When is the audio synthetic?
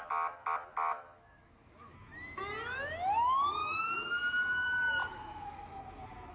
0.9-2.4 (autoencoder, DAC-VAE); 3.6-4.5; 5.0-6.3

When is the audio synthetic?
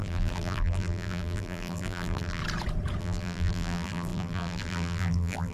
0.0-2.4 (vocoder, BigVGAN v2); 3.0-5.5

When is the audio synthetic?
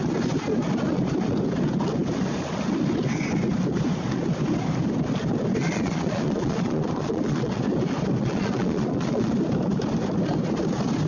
5.6-7.6 (vocoder, Vocos); 8.2-9.3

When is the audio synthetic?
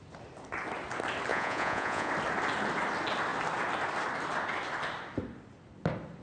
1.3-2.1 (vocoder, Vocos)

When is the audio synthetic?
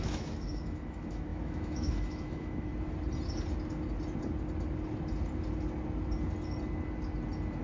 0.0-2.7 (autoencoder, DAC-VAE)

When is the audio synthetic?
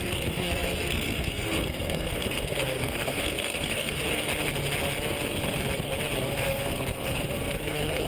0.0-4.3 (codec, SNAC); 6.3-8.1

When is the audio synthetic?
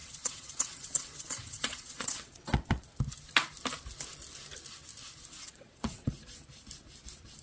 0.0-2.9 (vocoder, WaveNeXt); 5.3-6.1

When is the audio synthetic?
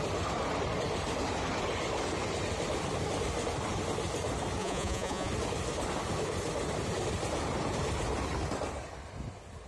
4.6-5.3 (vocoder, Vocos)